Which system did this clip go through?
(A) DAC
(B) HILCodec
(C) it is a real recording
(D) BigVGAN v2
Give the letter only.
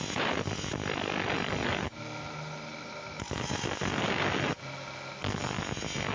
C